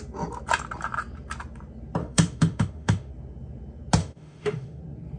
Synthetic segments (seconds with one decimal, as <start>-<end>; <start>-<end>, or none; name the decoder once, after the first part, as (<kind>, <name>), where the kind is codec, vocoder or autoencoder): 2.0-3.1 (autoencoder, DAC-VAE); 4.0-4.8